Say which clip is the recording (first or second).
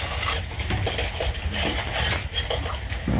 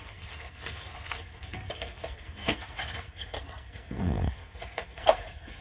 first